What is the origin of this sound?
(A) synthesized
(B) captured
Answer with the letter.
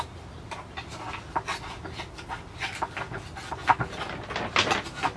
B